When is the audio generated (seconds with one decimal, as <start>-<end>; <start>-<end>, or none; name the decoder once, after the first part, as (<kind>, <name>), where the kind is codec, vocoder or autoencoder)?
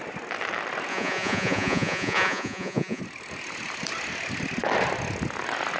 0.9-3.0 (vocoder, Vocos)